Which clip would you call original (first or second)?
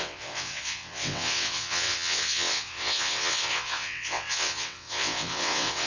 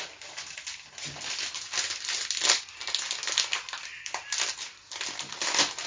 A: second